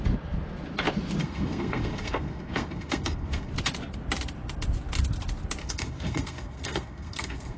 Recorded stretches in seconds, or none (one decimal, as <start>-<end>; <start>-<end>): 0.0-1.2; 3.5-5.6